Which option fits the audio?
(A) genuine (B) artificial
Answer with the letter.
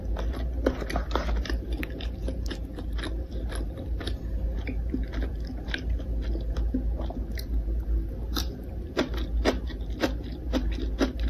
A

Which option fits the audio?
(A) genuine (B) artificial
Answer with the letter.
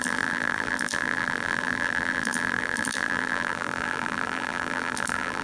B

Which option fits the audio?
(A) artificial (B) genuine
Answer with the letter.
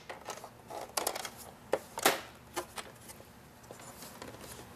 B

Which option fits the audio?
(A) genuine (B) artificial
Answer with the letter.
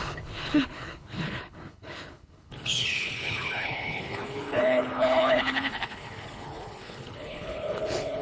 B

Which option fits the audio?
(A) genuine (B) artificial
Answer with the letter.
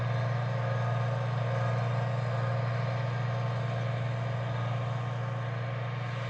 A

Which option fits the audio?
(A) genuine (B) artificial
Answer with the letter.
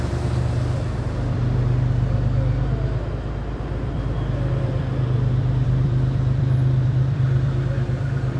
B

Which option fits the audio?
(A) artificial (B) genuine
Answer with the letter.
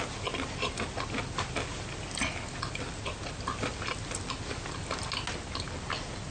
B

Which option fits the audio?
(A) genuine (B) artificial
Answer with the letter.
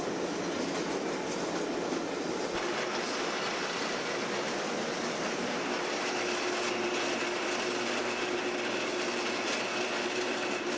A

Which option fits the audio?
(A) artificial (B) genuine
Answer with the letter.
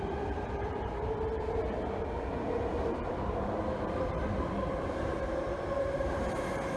B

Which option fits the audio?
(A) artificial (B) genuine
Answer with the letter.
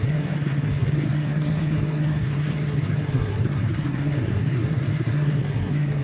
A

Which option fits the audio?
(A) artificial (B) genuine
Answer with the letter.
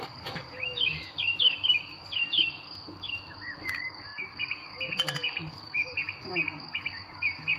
A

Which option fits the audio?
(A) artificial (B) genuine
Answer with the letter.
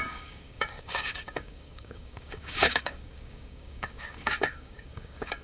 A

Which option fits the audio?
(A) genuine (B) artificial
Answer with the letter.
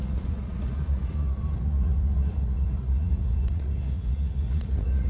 B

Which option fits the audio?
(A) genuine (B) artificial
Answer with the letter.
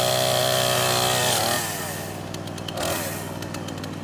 A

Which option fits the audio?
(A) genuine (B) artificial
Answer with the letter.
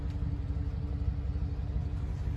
A